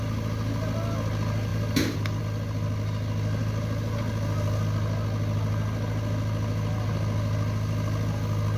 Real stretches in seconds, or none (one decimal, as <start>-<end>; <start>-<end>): 0.0-8.6